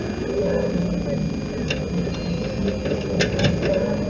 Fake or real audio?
real